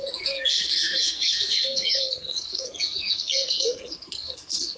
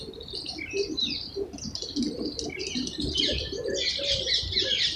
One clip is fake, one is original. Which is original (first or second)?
second